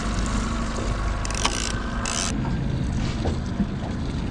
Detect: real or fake real